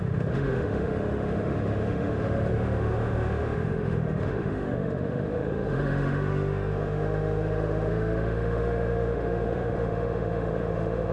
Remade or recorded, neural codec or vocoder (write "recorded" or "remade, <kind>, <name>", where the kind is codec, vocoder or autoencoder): remade, autoencoder, DAC-VAE